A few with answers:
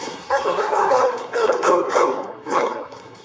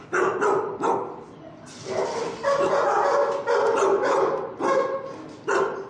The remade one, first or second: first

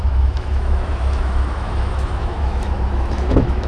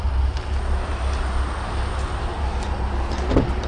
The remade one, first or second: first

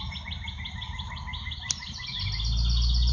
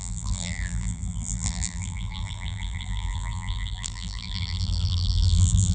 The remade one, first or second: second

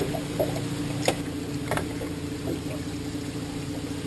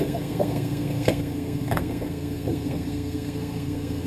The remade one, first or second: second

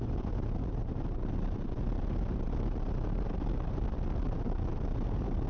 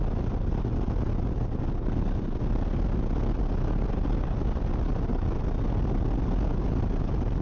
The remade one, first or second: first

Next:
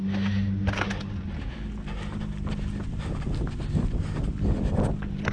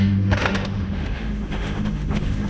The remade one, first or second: second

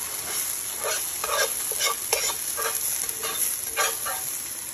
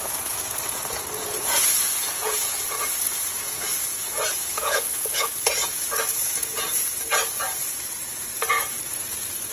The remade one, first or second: second